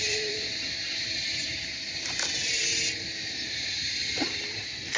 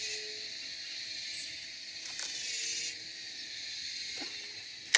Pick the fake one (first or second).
first